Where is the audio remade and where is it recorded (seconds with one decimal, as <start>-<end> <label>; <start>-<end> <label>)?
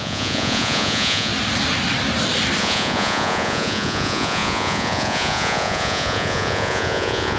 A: 0.0-1.3 remade; 1.3-2.6 recorded; 2.6-7.4 remade